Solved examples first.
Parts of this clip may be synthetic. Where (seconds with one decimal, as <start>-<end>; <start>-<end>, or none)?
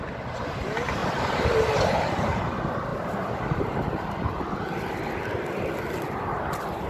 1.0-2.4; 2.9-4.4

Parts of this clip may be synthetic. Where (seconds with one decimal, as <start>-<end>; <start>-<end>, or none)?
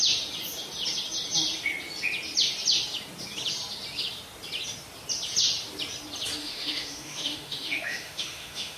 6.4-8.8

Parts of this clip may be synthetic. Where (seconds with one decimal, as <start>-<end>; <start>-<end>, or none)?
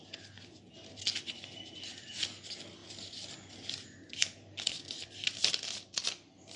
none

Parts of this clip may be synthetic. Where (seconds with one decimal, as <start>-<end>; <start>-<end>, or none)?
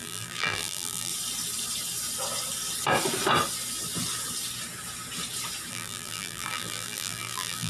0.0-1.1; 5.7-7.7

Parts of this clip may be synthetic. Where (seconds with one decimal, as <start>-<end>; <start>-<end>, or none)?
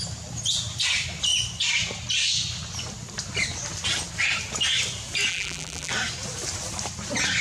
5.3-5.9